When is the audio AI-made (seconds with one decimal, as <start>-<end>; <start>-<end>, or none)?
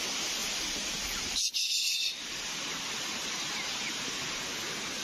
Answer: none